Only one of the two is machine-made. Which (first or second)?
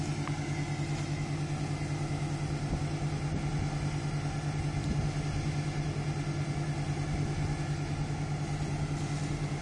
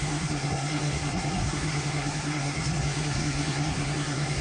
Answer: second